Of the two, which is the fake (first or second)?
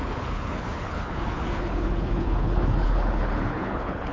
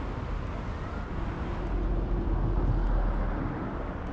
first